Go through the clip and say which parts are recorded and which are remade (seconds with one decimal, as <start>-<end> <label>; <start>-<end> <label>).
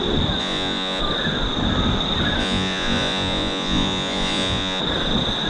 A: 0.0-0.4 recorded; 0.4-1.0 remade; 1.0-2.4 recorded; 2.4-4.8 remade; 4.8-5.5 recorded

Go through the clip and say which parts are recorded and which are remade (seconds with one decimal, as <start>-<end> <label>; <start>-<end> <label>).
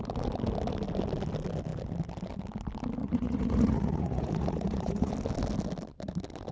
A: 0.0-3.0 recorded; 3.0-5.1 remade; 5.1-6.5 recorded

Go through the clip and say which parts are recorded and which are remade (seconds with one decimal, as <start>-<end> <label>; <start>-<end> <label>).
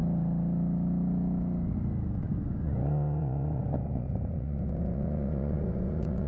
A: 0.0-2.2 recorded; 2.2-6.3 remade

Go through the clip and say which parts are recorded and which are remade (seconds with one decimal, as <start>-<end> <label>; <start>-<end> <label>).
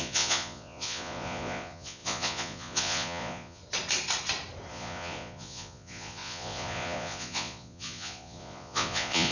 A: 0.0-3.6 remade; 3.6-4.7 recorded; 4.7-9.3 remade